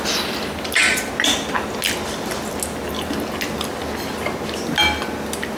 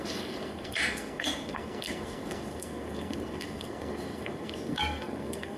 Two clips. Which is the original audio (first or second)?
first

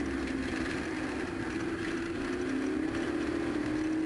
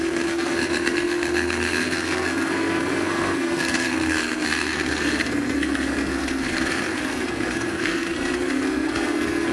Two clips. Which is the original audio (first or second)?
first